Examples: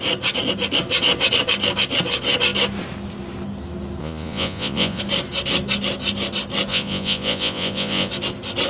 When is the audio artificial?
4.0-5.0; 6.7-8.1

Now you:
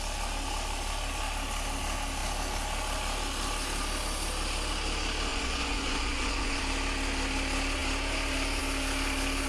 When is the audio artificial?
5.3-6.6

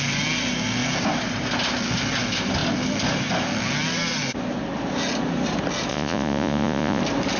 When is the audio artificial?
5.9-7.0

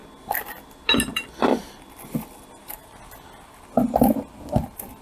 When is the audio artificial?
none

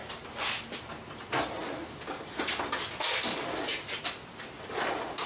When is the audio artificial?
none

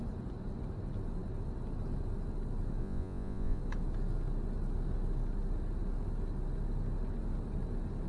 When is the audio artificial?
2.8-3.6